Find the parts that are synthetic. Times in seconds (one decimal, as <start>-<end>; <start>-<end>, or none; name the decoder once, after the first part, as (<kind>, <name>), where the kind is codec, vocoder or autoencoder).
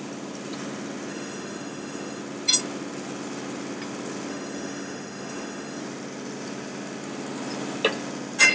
1.1-2.2 (autoencoder, DAC-VAE); 4.3-5.8